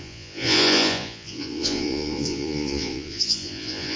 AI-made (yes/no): yes